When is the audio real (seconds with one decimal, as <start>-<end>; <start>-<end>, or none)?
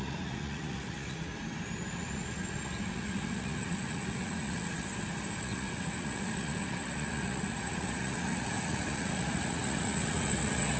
1.3-1.9; 4.9-5.4